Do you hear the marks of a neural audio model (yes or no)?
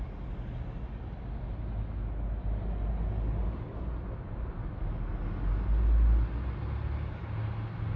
no